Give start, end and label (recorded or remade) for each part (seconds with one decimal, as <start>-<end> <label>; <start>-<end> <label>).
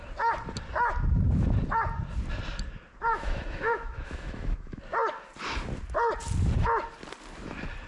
0.0-3.1 recorded; 3.1-4.8 remade; 4.8-7.9 recorded